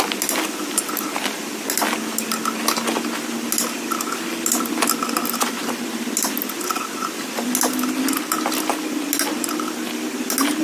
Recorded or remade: recorded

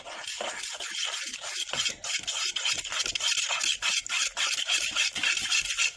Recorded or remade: recorded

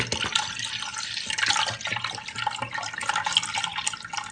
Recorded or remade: recorded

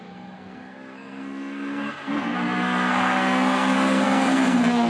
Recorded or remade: remade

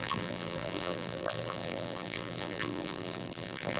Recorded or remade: remade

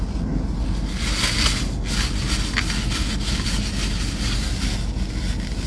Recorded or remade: recorded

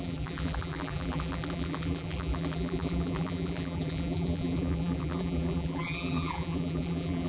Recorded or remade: remade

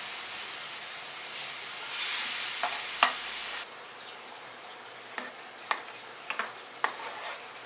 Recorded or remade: recorded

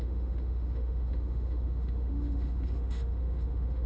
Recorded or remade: remade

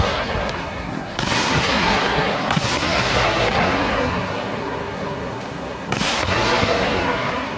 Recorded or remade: remade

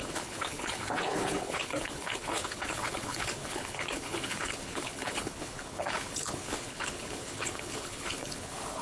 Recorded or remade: remade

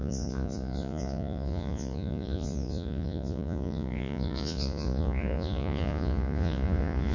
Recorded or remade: remade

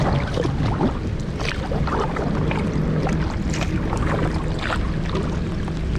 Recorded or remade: recorded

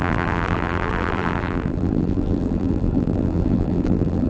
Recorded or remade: remade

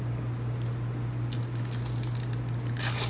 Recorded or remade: recorded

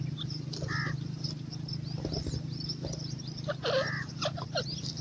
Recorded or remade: recorded